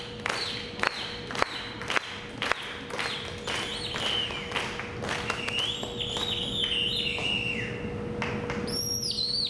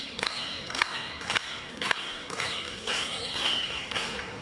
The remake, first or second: second